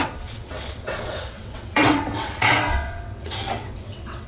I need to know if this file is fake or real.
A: fake